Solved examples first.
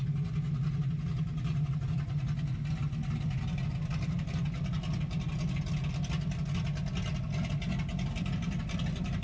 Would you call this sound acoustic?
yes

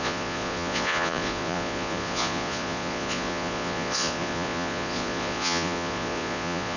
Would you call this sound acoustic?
no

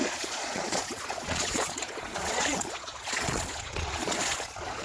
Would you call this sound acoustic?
no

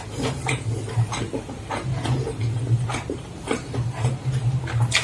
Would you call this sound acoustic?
yes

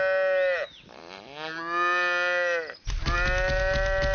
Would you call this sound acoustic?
yes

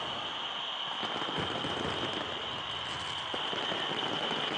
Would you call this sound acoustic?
yes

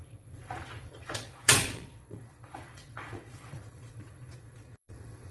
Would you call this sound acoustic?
no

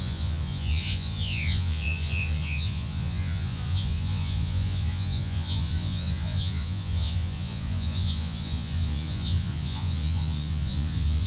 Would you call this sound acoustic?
no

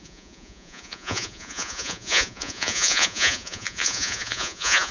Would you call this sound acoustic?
no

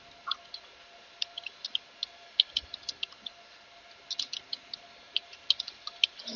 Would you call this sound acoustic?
yes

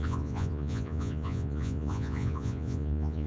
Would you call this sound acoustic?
no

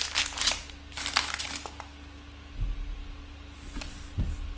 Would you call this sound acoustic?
yes